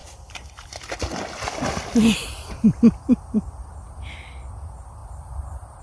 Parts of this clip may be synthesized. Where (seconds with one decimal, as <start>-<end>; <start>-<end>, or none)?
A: 0.0-0.8; 5.0-5.8